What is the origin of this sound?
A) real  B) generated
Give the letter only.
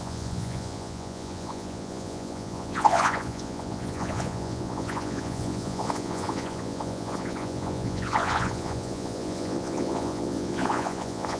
B